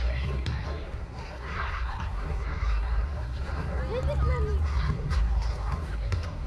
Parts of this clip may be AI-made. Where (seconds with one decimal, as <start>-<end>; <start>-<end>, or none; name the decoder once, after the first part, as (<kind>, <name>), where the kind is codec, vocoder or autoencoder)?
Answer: 0.0-3.8 (codec, SNAC); 4.6-6.5

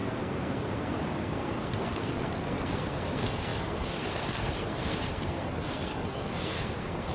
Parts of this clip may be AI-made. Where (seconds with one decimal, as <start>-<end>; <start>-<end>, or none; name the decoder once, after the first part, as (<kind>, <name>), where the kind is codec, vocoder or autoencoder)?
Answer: 0.0-7.1 (codec, SNAC)

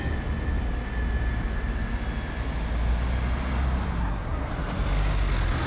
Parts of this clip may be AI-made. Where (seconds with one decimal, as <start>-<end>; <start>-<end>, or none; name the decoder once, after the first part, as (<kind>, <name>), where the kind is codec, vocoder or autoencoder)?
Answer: 4.0-4.5 (codec, SNAC)

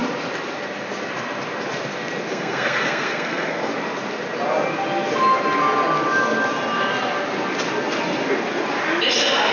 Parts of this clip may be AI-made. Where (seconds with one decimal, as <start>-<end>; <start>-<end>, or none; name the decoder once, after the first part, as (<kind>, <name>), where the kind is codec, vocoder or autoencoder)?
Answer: 2.3-3.7 (codec, SNAC)

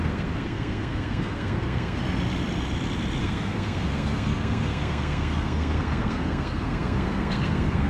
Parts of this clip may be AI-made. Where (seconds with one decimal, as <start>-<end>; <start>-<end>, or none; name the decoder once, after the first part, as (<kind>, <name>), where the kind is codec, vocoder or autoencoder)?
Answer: 0.0-2.0 (codec, SNAC); 3.2-7.9

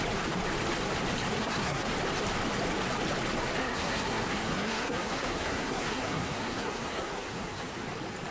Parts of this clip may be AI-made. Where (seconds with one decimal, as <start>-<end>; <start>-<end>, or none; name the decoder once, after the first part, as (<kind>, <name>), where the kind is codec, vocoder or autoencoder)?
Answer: 1.3-1.9 (codec, SNAC); 3.6-7.7

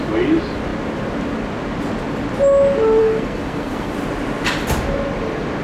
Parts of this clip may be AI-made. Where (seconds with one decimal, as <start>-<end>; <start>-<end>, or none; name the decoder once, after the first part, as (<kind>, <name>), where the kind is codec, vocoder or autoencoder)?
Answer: 3.0-3.9 (codec, SNAC)

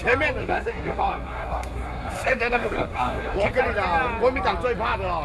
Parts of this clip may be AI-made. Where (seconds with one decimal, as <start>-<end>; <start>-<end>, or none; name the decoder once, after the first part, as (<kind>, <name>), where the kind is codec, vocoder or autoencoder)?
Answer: 0.4-3.5 (codec, SNAC)